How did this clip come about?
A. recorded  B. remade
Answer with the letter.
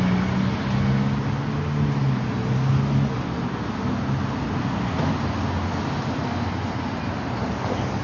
A